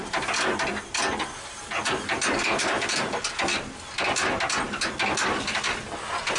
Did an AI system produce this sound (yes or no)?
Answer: no